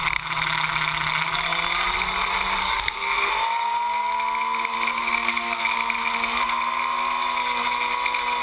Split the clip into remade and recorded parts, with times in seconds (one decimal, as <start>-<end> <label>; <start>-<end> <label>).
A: 0.0-2.6 recorded; 2.6-3.3 remade; 3.3-4.9 recorded; 4.9-5.6 remade; 5.6-8.4 recorded

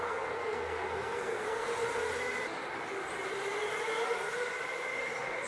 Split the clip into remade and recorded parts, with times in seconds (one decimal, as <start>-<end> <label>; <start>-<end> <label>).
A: 0.0-1.7 remade; 1.7-5.0 recorded; 5.0-5.5 remade

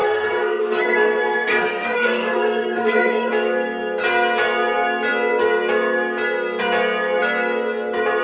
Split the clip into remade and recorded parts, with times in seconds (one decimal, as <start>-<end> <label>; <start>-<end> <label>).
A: 0.0-3.3 remade; 3.3-8.2 recorded

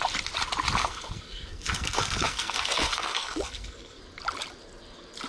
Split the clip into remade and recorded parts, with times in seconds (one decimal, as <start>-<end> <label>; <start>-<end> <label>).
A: 0.0-0.8 recorded; 0.8-4.0 remade; 4.0-5.3 recorded

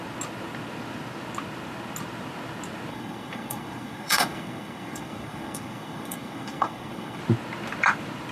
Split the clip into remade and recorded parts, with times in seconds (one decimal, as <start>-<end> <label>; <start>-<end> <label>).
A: 0.0-2.9 recorded; 2.9-7.2 remade; 7.2-8.3 recorded

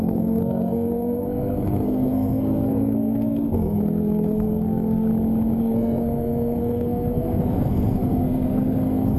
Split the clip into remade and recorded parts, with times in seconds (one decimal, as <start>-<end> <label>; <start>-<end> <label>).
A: 0.0-5.1 remade; 5.1-5.6 recorded; 5.6-9.2 remade

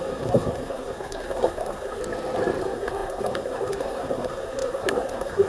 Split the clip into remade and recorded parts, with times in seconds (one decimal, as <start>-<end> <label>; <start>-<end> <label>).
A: 0.0-2.0 remade; 2.0-2.6 recorded; 2.6-5.5 remade